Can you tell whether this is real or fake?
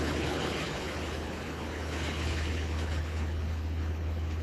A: fake